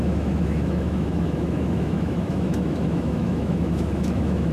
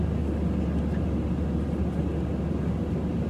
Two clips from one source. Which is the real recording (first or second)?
second